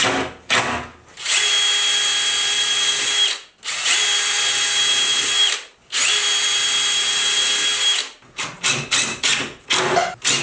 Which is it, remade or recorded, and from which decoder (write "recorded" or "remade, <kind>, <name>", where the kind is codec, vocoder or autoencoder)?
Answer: recorded